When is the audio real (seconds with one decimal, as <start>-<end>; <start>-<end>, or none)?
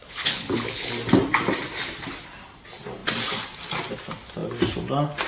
0.9-5.3